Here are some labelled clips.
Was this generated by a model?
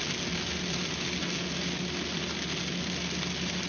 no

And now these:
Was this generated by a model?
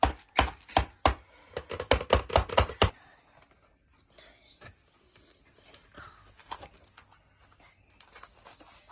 no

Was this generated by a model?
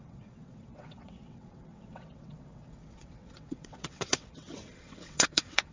yes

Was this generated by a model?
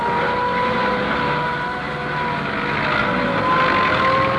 no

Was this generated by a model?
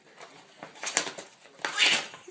no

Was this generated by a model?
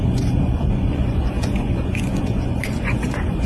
yes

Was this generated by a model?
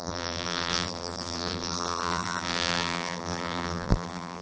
yes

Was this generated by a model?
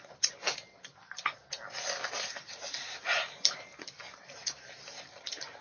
no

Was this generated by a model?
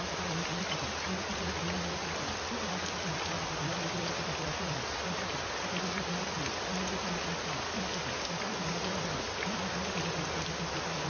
no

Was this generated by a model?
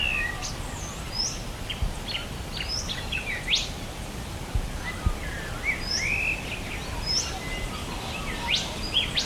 no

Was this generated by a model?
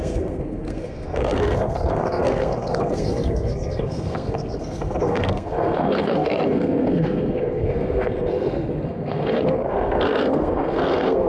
yes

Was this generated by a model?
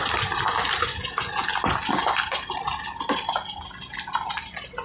no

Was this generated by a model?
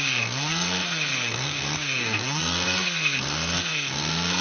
yes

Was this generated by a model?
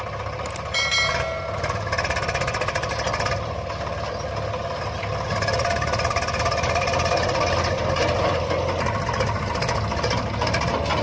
yes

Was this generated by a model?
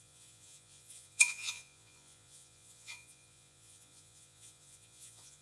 yes